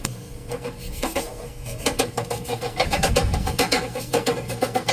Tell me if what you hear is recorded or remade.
remade